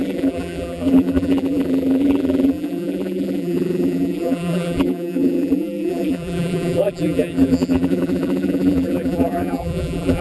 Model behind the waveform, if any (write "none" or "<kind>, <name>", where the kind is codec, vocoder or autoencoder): vocoder, BigVGAN v2